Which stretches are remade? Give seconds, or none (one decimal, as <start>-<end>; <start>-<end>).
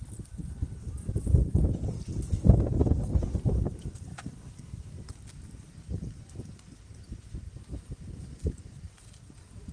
4.1-4.9